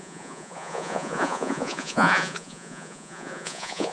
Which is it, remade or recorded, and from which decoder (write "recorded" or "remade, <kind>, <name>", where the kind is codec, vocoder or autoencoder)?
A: remade, vocoder, Vocos